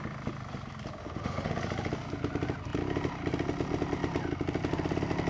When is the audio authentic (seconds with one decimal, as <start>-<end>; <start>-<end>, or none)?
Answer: 0.0-1.0; 1.5-5.3